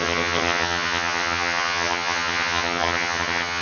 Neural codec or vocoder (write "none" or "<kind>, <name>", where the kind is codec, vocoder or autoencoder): vocoder, HiFi-GAN